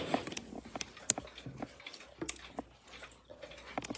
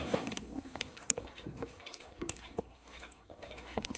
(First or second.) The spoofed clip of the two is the second